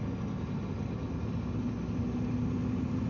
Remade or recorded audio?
recorded